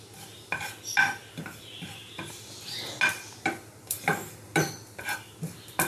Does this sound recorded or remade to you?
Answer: recorded